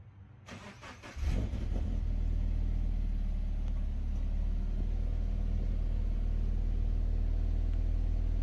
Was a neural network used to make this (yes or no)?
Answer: no